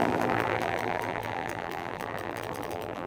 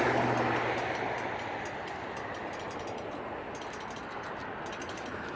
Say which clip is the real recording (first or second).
second